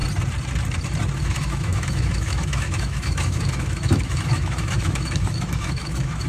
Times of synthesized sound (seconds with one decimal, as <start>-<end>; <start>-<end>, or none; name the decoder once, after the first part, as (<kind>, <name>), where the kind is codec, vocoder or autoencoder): 1.2-6.3 (autoencoder, DAC-VAE)